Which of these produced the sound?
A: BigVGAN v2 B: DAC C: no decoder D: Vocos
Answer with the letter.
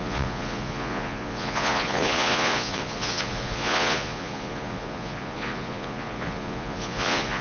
D